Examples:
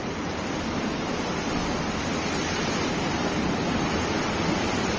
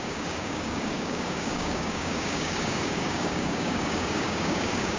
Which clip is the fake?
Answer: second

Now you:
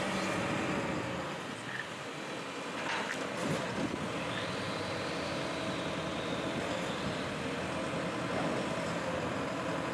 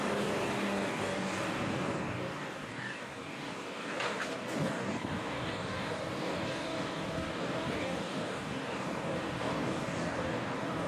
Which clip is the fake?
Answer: second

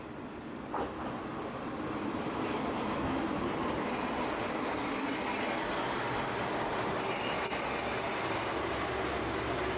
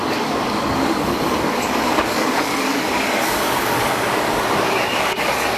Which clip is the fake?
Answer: second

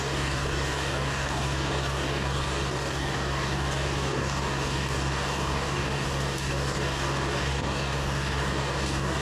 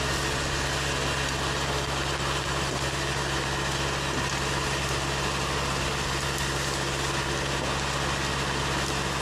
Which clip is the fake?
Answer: first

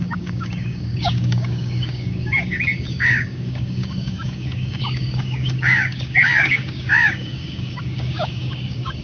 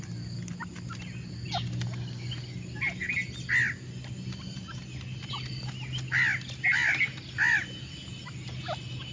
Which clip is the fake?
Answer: first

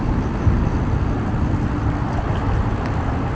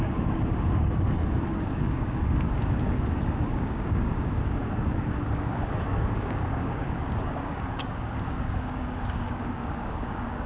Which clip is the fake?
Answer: second